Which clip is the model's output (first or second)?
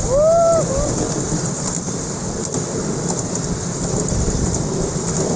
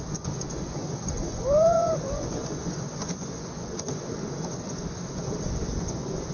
second